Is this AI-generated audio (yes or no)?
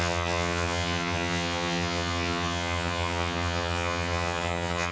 yes